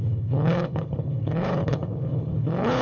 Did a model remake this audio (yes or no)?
yes